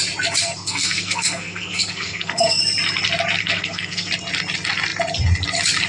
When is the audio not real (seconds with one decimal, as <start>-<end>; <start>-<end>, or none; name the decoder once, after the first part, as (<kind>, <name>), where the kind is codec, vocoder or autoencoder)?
0.4-2.6 (codec, SNAC); 3.4-4.1